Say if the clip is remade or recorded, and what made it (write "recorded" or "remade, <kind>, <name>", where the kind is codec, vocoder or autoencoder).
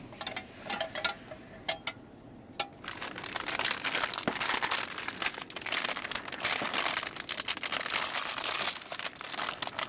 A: recorded